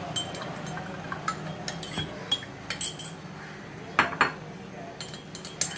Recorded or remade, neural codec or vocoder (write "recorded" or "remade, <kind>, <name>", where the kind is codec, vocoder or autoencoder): recorded